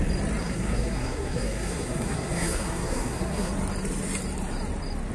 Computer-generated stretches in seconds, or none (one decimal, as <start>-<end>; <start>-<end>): 0.4-3.5